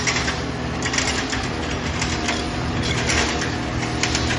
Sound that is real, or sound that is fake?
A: real